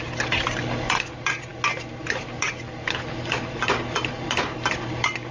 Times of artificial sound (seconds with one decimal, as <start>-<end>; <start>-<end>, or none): none